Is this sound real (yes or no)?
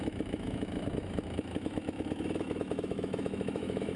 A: no